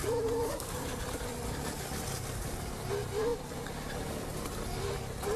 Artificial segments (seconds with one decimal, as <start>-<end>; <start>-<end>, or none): 0.0-2.9; 3.3-3.9